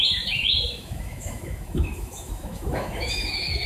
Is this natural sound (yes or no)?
no